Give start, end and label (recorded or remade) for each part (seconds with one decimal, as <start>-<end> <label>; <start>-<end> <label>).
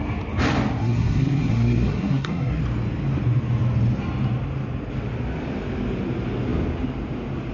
0.0-0.8 recorded; 0.8-2.6 remade; 2.6-7.5 recorded